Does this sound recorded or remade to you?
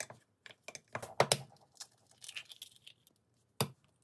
recorded